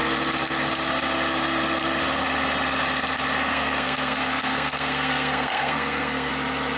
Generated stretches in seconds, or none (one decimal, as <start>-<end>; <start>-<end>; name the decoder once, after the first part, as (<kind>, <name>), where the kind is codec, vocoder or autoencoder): 3.5-6.3 (codec, SNAC)